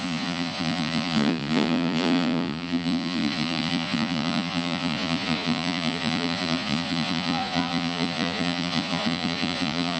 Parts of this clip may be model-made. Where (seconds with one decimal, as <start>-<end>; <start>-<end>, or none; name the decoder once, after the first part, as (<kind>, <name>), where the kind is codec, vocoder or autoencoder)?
0.0-10.0 (vocoder, Vocos)